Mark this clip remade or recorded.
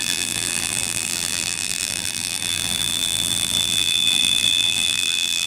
remade